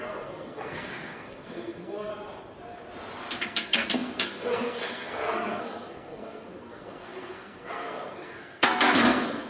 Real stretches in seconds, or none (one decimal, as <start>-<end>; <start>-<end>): 2.1-3.4

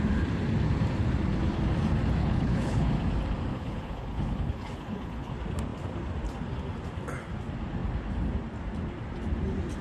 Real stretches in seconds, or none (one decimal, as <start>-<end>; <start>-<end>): 0.0-2.2; 2.9-3.5; 5.3-9.8